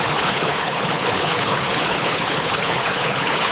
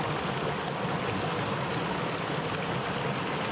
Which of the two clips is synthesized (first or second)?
first